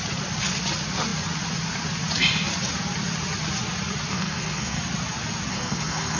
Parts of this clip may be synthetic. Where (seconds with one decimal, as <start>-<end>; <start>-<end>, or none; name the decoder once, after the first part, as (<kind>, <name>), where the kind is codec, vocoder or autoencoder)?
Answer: 4.1-4.8 (codec, SNAC); 5.5-6.2